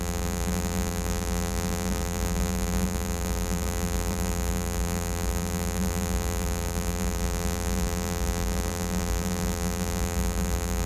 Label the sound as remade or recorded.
remade